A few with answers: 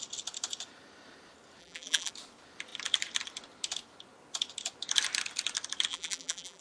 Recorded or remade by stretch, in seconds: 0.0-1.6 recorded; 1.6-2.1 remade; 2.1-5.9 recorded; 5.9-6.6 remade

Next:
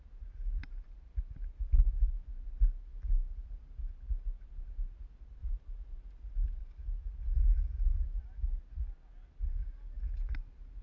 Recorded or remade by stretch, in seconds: 0.0-5.4 recorded; 5.4-6.6 remade; 6.6-10.8 recorded

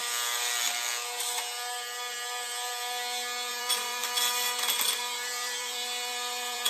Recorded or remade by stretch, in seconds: 0.0-3.5 recorded; 3.5-4.0 remade; 4.0-5.0 recorded; 5.0-6.7 remade

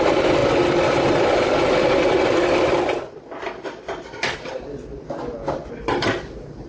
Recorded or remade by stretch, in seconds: 0.0-6.7 recorded

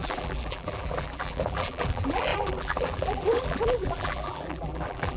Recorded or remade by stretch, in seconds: 0.0-5.2 remade